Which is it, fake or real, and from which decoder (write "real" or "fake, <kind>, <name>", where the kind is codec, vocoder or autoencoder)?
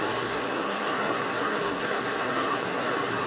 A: fake, codec, SNAC